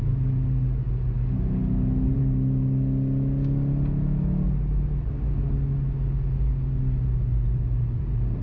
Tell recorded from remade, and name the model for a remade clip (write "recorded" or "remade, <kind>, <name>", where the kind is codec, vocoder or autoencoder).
recorded